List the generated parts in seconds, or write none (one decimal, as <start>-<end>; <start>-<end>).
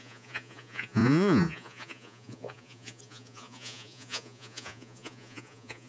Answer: 0.0-5.9